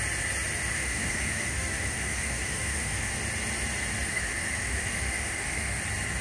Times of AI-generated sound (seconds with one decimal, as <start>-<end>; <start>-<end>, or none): 0.7-3.1; 4.1-5.8